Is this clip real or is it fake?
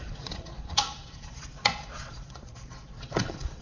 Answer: fake